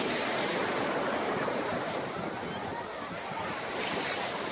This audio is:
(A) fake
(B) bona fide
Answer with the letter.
B